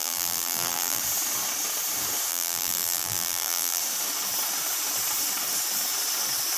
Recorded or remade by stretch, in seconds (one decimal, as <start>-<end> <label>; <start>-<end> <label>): 0.0-1.0 remade; 1.0-2.3 recorded; 2.3-3.8 remade; 3.8-6.6 recorded